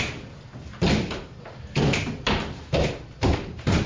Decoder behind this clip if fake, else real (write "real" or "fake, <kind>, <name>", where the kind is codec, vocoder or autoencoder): real